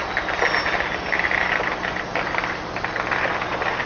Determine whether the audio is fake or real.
real